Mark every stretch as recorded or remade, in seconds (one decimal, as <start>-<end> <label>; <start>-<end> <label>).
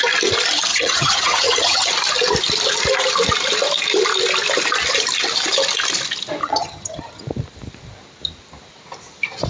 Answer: 0.0-0.7 recorded; 0.7-1.9 remade; 1.9-6.4 recorded; 6.4-7.2 remade; 7.2-9.5 recorded